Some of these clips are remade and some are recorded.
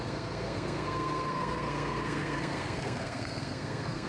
remade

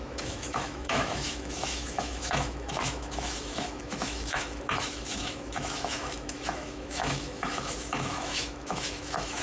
remade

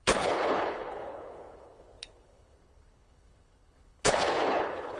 remade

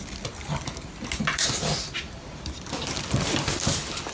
recorded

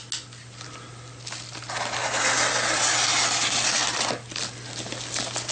recorded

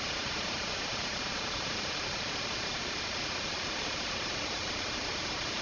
remade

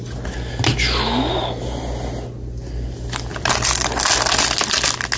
recorded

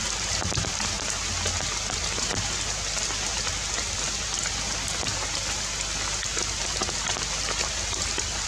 recorded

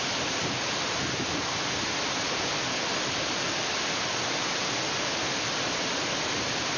recorded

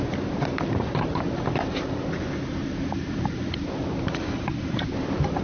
recorded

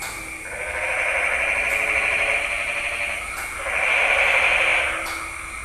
recorded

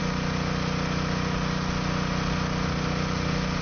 recorded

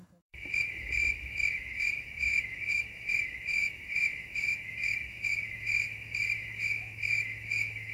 remade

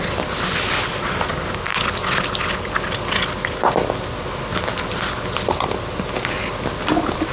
recorded